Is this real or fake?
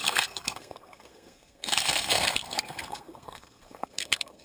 fake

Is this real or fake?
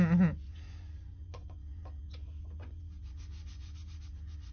fake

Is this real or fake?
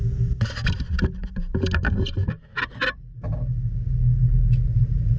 real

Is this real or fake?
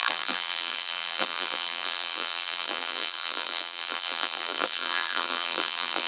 fake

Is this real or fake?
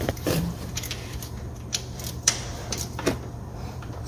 fake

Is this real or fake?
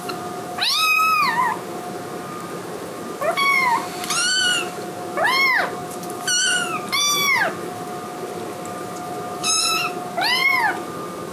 real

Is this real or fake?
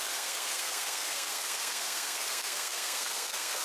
fake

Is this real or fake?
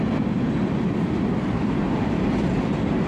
fake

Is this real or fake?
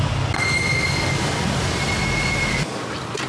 real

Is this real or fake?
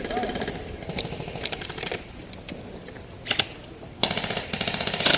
real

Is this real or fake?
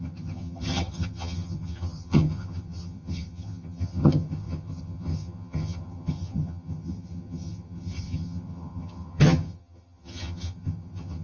fake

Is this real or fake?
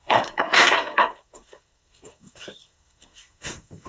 fake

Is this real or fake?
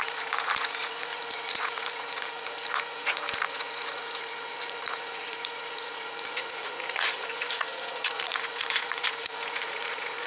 fake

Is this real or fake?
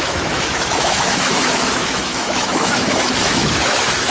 fake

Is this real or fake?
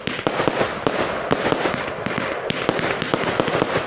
real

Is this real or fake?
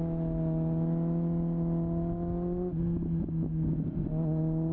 real